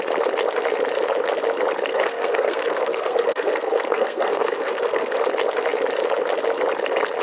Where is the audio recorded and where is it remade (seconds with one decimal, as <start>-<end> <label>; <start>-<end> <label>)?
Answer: 0.0-1.9 recorded; 1.9-5.2 remade; 5.2-7.2 recorded